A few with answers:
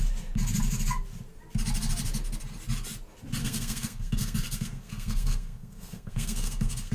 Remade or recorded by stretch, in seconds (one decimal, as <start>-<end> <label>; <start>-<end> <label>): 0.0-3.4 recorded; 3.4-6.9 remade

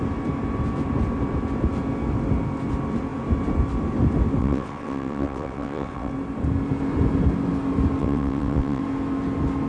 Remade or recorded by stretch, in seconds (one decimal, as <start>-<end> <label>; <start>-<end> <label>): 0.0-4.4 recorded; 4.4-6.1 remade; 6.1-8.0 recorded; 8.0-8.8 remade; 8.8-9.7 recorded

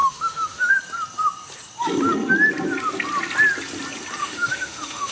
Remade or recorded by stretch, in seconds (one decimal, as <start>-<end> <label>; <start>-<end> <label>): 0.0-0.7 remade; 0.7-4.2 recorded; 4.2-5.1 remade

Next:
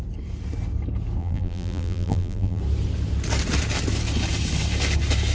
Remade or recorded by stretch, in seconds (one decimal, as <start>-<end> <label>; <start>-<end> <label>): 0.0-1.2 recorded; 1.2-2.6 remade; 2.6-5.3 recorded

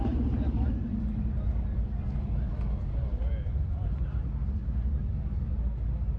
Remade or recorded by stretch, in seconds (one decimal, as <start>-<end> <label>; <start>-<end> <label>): 0.0-6.2 recorded